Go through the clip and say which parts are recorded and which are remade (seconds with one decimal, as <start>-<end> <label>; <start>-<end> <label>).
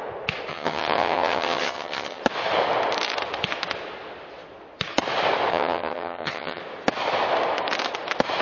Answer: 0.0-0.5 recorded; 0.5-2.2 remade; 2.2-5.5 recorded; 5.5-6.6 remade; 6.6-8.4 recorded